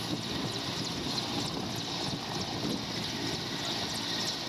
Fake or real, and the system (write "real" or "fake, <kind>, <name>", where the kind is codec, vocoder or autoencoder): real